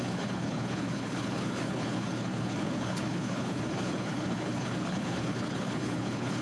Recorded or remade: remade